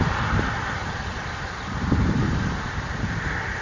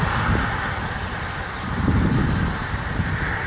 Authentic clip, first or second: second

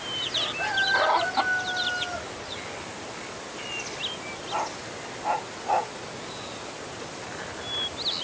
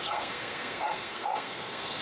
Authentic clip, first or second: first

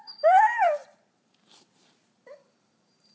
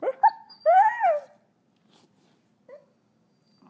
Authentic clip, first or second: second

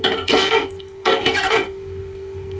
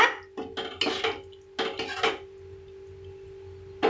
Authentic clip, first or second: second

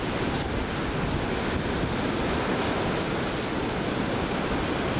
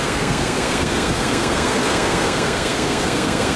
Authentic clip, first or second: first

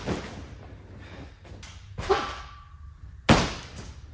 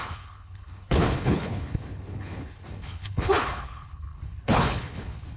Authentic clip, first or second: first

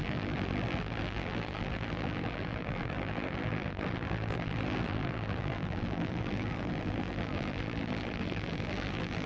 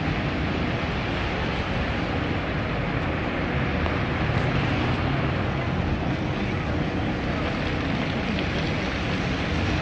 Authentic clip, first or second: second